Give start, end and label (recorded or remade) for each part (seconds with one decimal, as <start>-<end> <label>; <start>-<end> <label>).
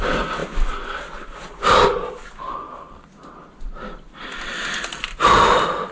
0.0-5.9 recorded